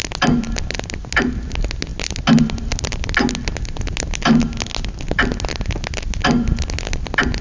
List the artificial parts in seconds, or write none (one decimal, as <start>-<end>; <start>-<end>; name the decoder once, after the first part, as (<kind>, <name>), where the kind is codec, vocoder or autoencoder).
none